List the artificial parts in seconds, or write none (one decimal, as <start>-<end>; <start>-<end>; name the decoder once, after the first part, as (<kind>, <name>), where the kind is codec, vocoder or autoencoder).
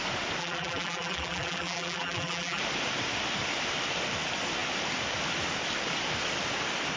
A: 0.4-2.6 (vocoder, BigVGAN v2)